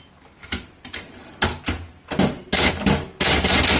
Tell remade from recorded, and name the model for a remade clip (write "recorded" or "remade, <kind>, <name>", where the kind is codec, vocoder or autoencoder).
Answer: recorded